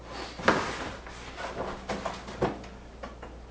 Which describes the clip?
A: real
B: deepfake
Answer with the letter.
A